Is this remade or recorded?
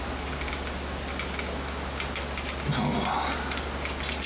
recorded